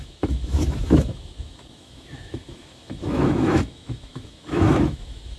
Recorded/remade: remade